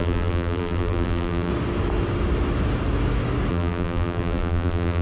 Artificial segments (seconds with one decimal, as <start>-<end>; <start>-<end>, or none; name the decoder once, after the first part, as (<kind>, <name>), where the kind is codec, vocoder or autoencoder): 0.0-1.5 (vocoder, BigVGAN v2); 3.5-5.0

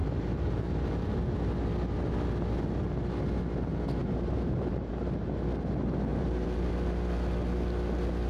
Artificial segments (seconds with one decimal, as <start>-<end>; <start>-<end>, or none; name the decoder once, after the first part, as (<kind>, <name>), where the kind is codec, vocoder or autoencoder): 0.0-1.2 (vocoder, BigVGAN v2); 4.0-4.9; 6.1-6.7

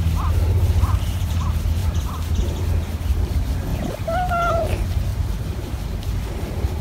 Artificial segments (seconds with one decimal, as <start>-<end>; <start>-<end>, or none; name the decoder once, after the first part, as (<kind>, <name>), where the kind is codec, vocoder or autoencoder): 1.8-2.5 (vocoder, BigVGAN v2); 5.1-5.8

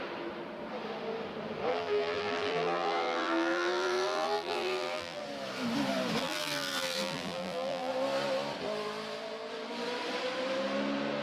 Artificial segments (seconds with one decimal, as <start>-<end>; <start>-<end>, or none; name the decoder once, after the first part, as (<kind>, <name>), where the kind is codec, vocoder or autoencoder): 1.7-5.2 (vocoder, BigVGAN v2); 6.2-7.9

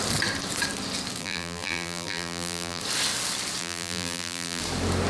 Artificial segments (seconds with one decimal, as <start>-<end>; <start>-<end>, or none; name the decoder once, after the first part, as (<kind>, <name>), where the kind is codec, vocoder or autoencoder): 1.2-2.8 (vocoder, BigVGAN v2); 3.6-4.6